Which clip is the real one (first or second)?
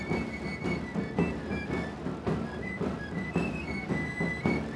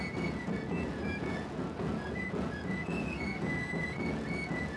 first